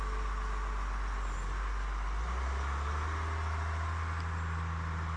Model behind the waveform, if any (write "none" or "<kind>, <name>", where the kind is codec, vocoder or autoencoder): none